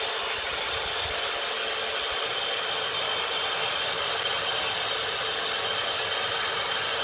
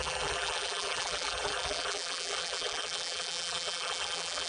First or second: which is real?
first